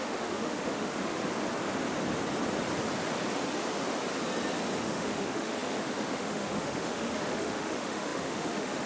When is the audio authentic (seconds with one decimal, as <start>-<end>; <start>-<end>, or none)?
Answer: 1.2-4.8